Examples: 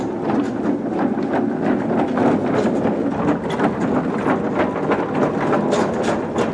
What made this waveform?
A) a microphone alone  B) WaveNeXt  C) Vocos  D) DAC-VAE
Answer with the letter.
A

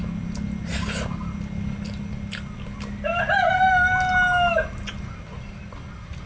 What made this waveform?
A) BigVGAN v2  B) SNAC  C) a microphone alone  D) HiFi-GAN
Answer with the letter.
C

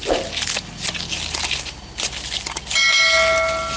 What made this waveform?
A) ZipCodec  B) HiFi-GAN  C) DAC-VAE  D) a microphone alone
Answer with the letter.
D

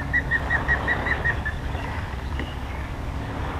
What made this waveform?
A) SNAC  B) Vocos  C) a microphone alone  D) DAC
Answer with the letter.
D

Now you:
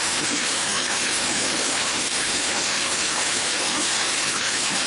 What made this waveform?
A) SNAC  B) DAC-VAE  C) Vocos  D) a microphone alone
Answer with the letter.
B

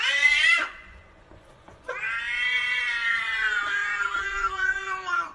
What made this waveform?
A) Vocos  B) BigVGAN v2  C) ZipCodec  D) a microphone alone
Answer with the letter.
A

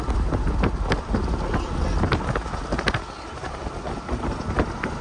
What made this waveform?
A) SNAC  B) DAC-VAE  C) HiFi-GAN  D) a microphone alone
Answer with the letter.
D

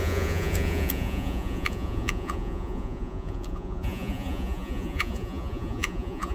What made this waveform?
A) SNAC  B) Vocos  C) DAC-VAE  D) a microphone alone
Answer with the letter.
B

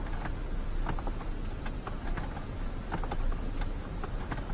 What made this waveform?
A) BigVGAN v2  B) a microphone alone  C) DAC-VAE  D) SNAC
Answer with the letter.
B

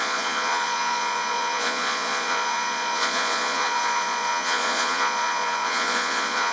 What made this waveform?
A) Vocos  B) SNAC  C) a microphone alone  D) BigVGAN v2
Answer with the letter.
A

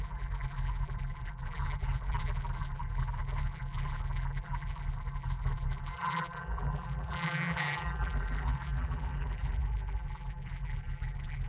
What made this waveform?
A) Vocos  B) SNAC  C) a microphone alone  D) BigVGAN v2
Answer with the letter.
D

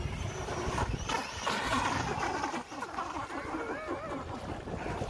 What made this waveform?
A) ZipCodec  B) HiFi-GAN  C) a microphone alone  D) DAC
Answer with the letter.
C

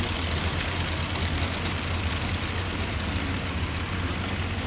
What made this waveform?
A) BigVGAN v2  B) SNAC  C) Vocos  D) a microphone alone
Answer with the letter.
D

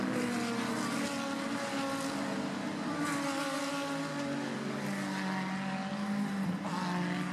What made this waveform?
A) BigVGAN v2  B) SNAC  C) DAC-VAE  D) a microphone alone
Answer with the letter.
D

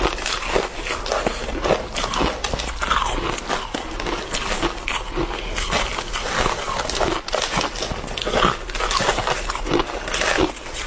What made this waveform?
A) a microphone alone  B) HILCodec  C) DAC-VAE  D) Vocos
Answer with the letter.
A